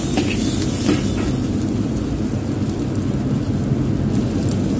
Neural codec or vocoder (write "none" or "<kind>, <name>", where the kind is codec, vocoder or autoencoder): none